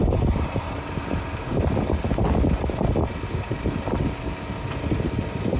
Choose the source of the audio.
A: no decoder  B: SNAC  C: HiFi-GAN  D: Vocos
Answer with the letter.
A